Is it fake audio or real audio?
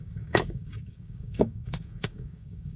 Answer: fake